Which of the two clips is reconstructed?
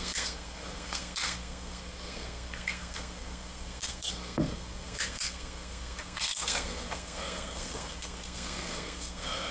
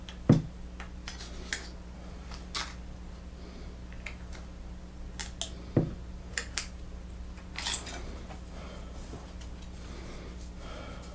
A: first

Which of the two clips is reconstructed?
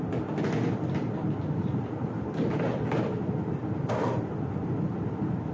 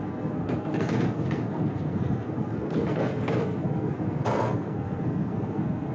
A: second